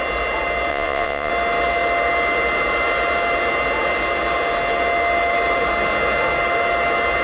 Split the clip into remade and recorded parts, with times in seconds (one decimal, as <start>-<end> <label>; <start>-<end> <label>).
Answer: 0.0-0.7 recorded; 0.7-1.3 remade; 1.3-7.2 recorded